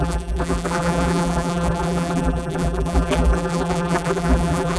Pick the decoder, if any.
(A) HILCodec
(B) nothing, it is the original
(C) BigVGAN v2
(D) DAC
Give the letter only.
C